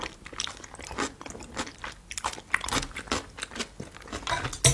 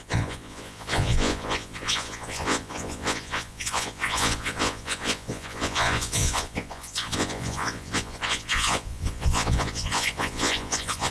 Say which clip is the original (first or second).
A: first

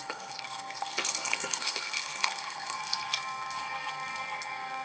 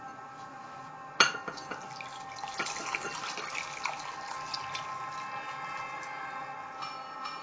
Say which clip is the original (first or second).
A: second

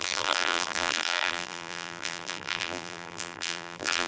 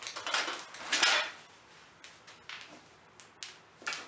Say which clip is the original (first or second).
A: second